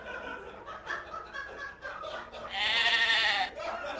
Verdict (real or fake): real